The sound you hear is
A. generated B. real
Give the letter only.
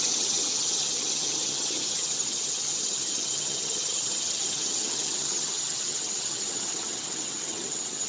A